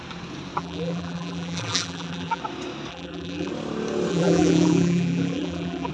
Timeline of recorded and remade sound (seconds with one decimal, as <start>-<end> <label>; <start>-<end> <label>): 0.0-0.6 recorded; 0.6-2.4 remade; 2.4-2.9 recorded; 2.9-3.5 remade; 3.5-4.1 recorded; 4.1-5.9 remade